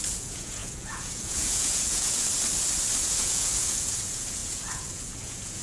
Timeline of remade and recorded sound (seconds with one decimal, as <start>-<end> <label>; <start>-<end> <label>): 0.0-2.3 remade; 2.3-3.0 recorded; 3.0-5.6 remade